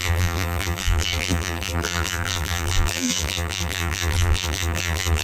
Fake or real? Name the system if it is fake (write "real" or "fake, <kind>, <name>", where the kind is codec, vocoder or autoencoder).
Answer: fake, vocoder, BigVGAN v2